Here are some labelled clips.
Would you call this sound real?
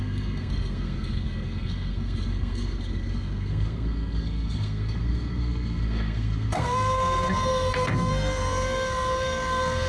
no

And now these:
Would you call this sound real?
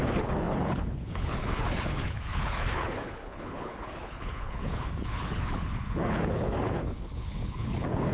no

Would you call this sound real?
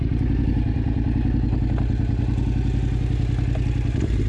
yes